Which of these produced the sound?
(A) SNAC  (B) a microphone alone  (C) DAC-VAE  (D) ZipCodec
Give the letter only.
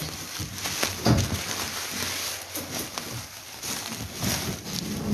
B